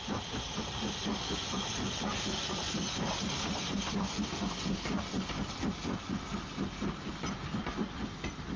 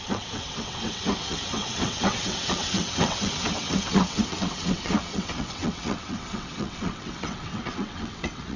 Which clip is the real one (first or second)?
first